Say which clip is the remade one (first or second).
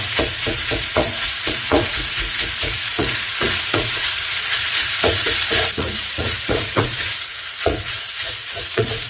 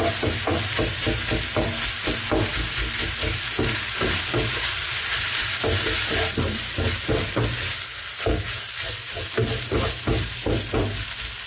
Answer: first